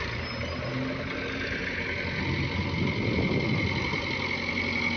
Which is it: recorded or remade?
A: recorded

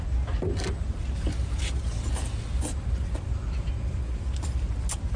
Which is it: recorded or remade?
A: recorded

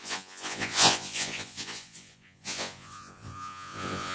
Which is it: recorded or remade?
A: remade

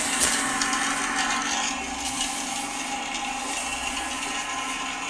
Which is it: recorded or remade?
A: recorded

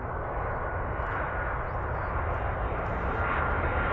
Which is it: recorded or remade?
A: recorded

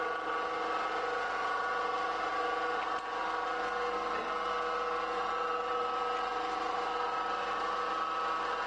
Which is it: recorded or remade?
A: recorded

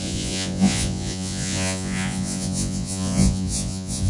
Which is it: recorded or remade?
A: remade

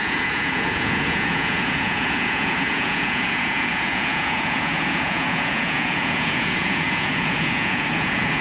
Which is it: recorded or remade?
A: remade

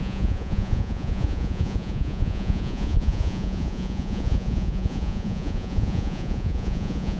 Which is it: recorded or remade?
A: remade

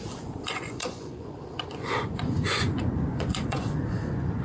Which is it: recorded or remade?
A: remade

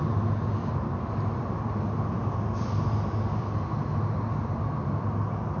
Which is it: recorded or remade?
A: recorded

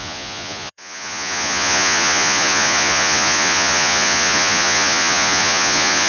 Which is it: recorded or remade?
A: remade